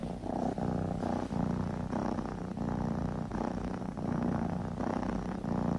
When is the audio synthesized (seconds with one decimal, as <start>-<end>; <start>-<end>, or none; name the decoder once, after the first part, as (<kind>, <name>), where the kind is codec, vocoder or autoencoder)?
3.8-4.6 (codec, SNAC)